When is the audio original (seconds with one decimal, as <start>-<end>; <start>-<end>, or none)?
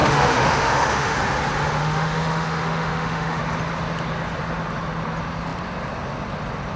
1.2-1.8; 3.4-6.8